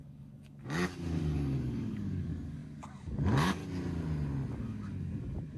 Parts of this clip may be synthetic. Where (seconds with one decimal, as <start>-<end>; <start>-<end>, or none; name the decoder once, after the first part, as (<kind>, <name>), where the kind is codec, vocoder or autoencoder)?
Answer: 0.0-3.6 (codec, DAC); 4.5-5.6